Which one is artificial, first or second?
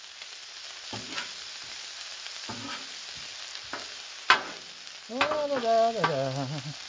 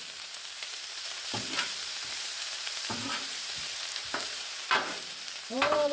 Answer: second